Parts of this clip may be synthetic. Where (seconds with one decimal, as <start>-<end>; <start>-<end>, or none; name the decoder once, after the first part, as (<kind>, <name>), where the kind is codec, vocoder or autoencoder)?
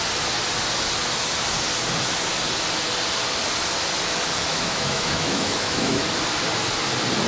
4.5-6.0 (autoencoder, DAC-VAE)